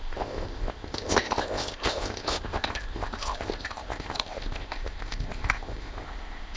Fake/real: fake